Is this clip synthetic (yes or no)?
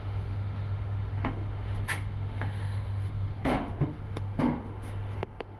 yes